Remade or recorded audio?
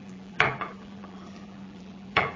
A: remade